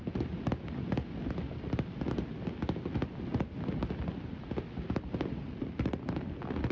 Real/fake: real